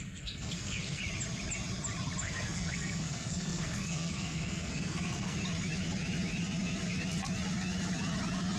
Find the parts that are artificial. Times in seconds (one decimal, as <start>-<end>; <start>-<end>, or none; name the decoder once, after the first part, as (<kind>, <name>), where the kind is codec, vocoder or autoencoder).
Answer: 0.0-1.0 (codec, SNAC); 2.2-5.4